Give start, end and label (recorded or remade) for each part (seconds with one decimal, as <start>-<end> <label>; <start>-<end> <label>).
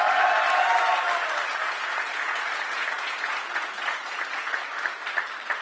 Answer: 0.0-1.5 recorded; 1.5-4.6 remade; 4.6-5.6 recorded